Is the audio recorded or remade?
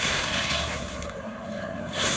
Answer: remade